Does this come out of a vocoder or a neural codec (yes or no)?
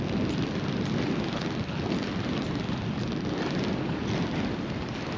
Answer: no